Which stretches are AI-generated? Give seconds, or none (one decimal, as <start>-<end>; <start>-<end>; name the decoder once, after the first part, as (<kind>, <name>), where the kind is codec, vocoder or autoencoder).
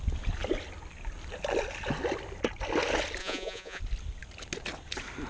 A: 3.2-3.8 (vocoder, Vocos)